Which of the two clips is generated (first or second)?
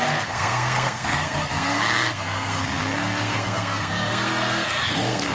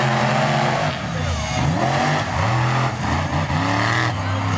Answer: first